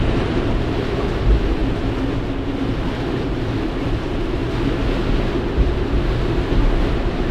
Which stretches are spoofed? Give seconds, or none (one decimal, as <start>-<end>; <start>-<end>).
0.0-1.6; 3.1-4.4; 5.5-7.3